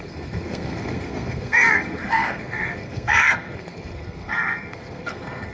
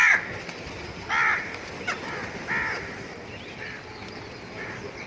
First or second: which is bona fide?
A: second